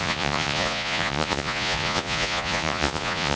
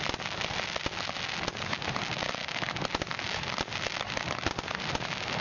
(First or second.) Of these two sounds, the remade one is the first